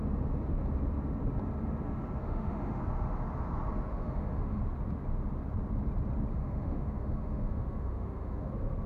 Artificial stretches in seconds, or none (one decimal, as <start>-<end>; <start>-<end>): 2.2-2.8; 3.9-4.6; 6.3-8.5

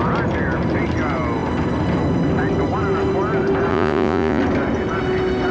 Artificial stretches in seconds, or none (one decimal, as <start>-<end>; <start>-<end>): 3.7-4.4

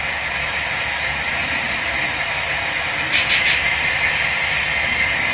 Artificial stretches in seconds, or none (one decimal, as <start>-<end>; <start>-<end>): 1.4-4.6

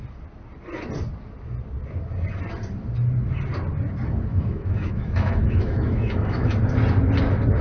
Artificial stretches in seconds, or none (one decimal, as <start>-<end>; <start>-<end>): 4.3-6.5

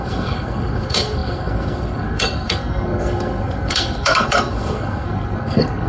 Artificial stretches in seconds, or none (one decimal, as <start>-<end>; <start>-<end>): 0.0-5.9

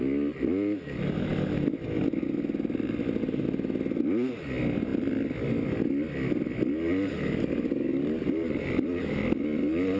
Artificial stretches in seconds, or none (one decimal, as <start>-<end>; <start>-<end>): none

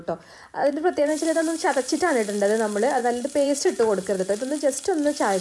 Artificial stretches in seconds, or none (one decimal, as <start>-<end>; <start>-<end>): 0.6-2.0; 3.0-4.5